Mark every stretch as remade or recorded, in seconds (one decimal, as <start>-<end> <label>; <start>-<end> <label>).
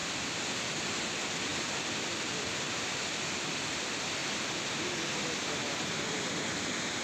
0.0-0.9 remade; 0.9-1.5 recorded; 1.5-3.0 remade; 3.0-4.2 recorded; 4.2-7.0 remade